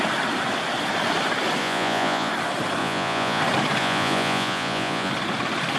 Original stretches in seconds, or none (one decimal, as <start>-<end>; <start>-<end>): 0.0-1.6; 2.3-2.8; 3.4-3.8; 5.1-5.8

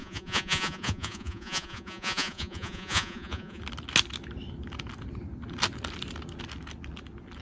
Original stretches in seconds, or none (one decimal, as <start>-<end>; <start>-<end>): 3.6-7.4

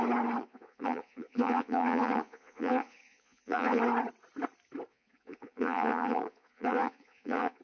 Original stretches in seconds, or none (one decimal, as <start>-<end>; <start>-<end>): 0.0-0.4; 3.8-4.9

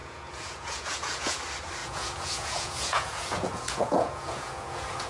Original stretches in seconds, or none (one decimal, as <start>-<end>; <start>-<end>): 1.4-1.8

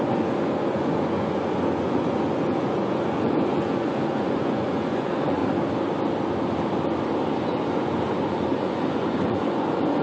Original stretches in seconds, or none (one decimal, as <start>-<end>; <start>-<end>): 5.4-7.4

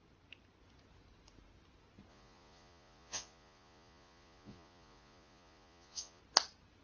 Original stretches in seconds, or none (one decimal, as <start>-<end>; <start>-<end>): 0.0-2.1; 6.2-6.8

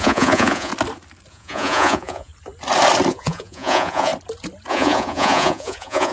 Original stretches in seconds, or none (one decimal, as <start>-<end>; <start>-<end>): 0.7-1.3; 2.3-3.1; 4.1-4.7

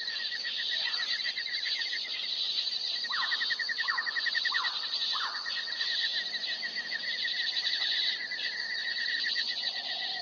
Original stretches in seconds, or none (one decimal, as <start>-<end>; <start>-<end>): 2.9-3.6; 6.1-7.7